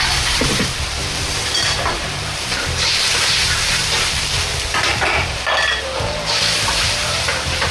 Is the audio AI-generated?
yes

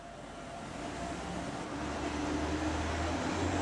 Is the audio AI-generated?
no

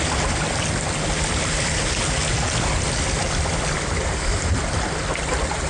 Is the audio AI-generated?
no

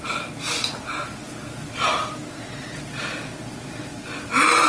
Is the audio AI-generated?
no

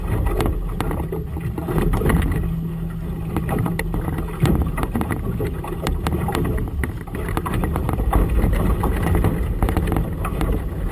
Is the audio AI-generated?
no